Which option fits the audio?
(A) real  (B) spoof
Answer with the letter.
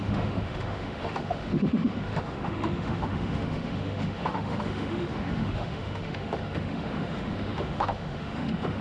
B